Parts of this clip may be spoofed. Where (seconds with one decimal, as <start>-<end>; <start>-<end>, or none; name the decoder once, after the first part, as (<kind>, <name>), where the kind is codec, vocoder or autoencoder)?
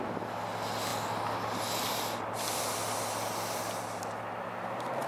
none